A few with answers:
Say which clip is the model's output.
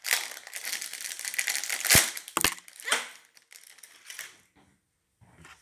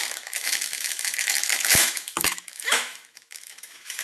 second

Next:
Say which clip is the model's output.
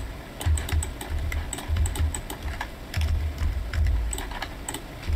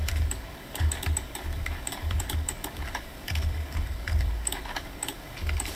second